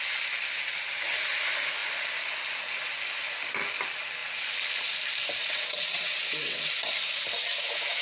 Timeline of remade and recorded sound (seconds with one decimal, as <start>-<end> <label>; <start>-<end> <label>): 0.0-5.4 recorded; 5.4-6.7 remade; 6.7-8.0 recorded